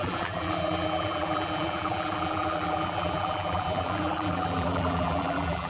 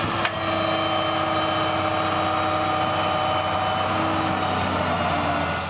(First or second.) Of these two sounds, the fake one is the first